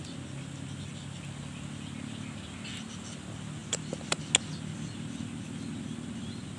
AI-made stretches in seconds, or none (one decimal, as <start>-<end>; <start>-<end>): 3.6-4.2

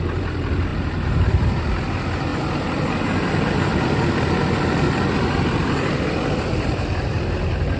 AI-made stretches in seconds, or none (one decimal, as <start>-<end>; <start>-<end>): 0.0-0.7; 1.6-7.8

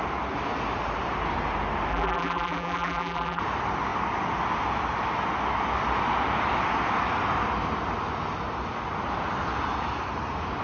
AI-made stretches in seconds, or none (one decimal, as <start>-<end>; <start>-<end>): 1.9-3.4

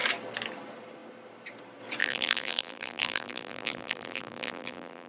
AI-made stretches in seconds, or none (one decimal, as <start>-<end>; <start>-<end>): 2.0-5.1